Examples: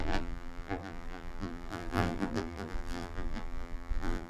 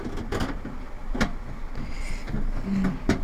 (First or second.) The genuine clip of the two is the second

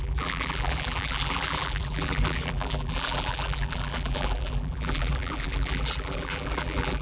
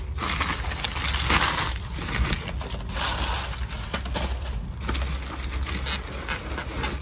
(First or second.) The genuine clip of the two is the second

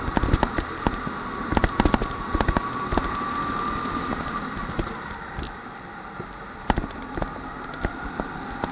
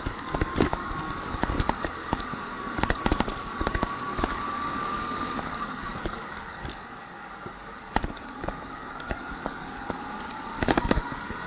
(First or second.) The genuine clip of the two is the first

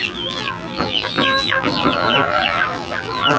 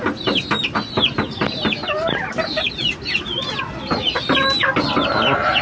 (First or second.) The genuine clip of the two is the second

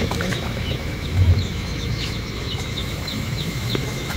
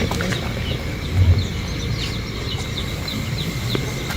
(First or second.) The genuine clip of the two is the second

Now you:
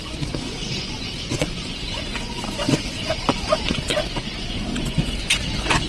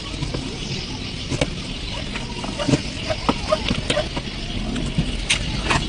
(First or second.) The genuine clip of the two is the second